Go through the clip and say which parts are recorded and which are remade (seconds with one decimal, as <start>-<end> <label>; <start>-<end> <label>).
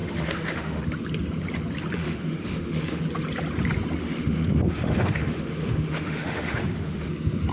0.0-0.8 remade; 0.8-2.0 recorded; 2.0-3.0 remade; 3.0-4.0 recorded; 4.0-7.1 remade; 7.1-7.5 recorded